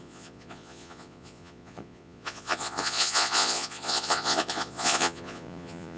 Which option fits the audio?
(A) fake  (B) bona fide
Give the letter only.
A